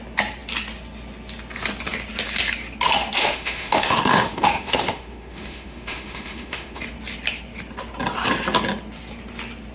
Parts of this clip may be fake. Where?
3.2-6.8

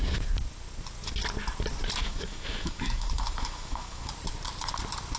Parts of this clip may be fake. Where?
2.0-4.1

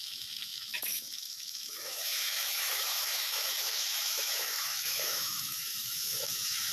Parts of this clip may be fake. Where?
0.0-6.7

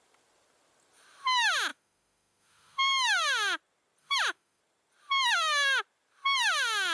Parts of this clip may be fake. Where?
1.7-2.9; 4.0-4.6

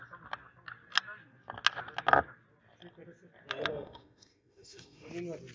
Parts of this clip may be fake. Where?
3.7-5.1

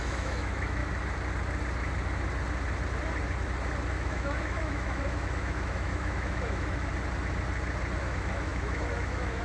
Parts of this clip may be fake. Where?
0.0-0.8; 3.9-6.9; 8.0-9.4

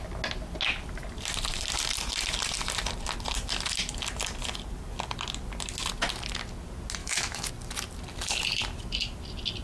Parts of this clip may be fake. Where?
7.0-7.5

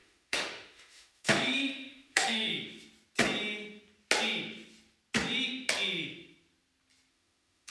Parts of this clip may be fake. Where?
0.0-2.5; 7.1-7.7